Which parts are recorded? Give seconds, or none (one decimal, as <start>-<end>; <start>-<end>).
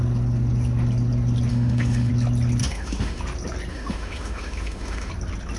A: 0.0-1.5; 2.1-2.6; 3.2-3.7; 5.1-5.6